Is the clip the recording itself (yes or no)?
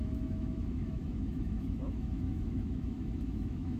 no